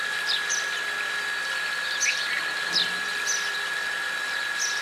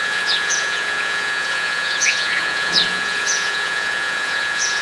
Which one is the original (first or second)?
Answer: first